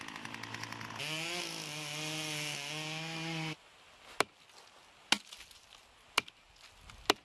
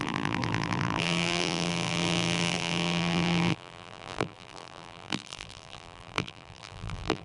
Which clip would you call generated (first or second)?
second